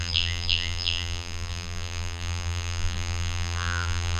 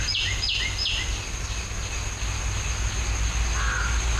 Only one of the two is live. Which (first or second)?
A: second